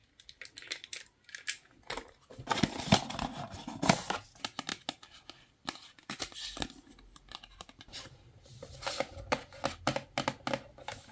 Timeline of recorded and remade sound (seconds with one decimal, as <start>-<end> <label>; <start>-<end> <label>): 0.0-11.1 recorded